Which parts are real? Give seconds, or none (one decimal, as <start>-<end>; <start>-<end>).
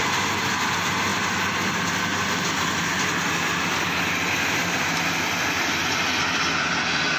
0.0-7.2